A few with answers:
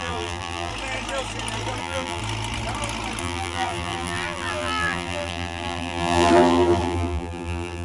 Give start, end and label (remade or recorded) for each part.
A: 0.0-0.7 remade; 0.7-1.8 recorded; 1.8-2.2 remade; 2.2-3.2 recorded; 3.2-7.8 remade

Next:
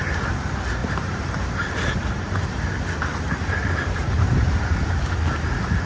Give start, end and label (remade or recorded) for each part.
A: 0.0-0.8 recorded; 0.8-2.6 remade; 2.6-4.0 recorded; 4.0-4.9 remade; 4.9-5.9 recorded

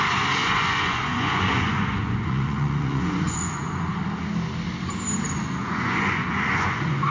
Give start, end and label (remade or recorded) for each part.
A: 0.0-0.4 recorded; 0.4-3.9 remade; 3.9-5.6 recorded; 5.6-7.1 remade